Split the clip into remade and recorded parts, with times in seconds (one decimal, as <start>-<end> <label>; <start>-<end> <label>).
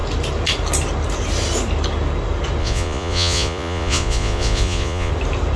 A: 0.0-2.6 recorded; 2.6-5.1 remade; 5.1-5.6 recorded